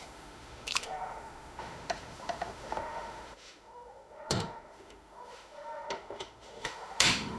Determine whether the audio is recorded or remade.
remade